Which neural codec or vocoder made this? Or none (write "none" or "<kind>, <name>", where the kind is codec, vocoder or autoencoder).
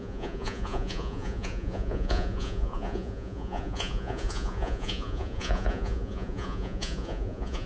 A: vocoder, Vocos